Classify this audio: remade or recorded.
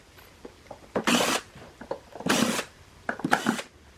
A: recorded